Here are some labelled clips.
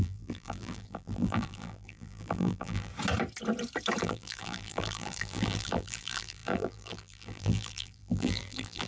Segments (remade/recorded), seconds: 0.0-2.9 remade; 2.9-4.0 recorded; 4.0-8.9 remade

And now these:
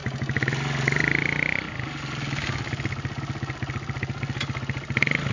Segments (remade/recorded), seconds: 0.0-5.3 recorded